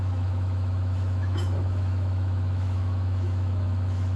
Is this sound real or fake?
fake